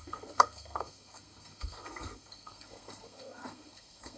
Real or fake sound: fake